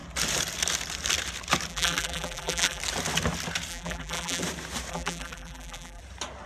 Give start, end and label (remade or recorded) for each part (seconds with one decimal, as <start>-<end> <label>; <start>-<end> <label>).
0.0-1.7 recorded; 1.7-2.8 remade; 2.8-3.7 recorded; 3.7-4.4 remade; 4.4-4.9 recorded; 4.9-6.0 remade; 6.0-6.5 recorded